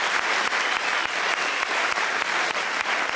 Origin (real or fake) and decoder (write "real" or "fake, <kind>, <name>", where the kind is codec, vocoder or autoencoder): real